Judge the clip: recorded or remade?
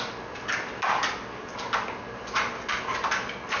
recorded